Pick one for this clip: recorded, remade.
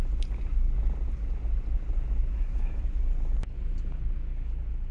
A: recorded